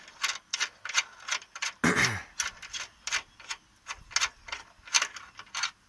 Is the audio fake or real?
real